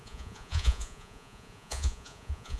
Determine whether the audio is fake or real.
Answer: fake